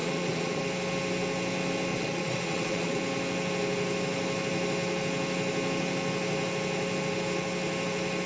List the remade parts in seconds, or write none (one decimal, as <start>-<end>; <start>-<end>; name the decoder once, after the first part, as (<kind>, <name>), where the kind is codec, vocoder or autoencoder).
0.0-0.6 (vocoder, Vocos); 1.9-3.0